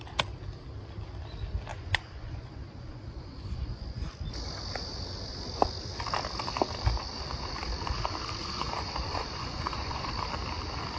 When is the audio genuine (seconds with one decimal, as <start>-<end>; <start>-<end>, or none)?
0.0-1.7; 4.1-8.4; 10.1-11.0